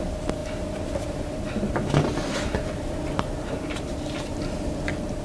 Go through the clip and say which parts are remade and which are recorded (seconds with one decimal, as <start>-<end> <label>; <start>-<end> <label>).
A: 0.0-5.2 recorded